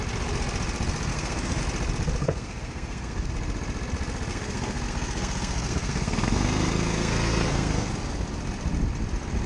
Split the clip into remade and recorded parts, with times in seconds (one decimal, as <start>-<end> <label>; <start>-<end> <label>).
0.0-1.1 recorded; 1.1-1.6 remade; 1.6-2.2 recorded; 2.2-3.3 remade; 3.3-4.3 recorded; 4.3-7.9 remade; 7.9-9.5 recorded